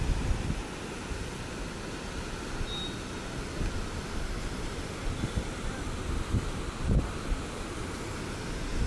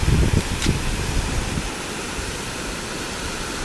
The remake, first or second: second